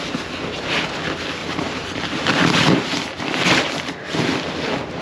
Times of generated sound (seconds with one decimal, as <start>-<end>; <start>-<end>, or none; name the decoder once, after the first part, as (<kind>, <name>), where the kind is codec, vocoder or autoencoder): 1.4-3.0 (vocoder, BigVGAN v2)